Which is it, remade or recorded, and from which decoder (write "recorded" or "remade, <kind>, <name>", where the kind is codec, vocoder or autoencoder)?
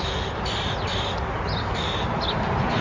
recorded